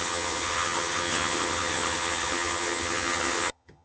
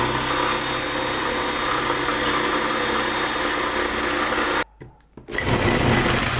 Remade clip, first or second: first